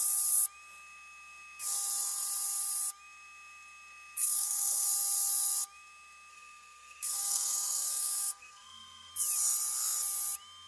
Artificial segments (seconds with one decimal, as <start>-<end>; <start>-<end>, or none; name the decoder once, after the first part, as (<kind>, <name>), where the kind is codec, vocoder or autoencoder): 4.2-4.9 (codec, SNAC); 6.3-9.1